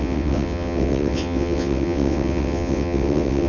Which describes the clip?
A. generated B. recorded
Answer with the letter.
A